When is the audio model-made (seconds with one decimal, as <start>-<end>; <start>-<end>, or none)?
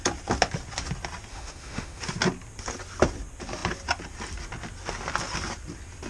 1.3-2.0